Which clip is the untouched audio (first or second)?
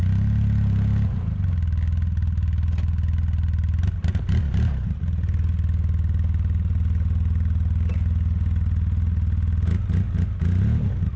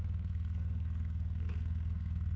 first